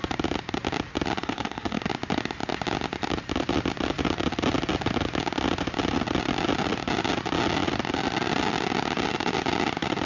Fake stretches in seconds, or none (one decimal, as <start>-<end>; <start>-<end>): 1.2-1.8